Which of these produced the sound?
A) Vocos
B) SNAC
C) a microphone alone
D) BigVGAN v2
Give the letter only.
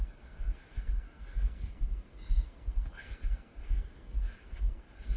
B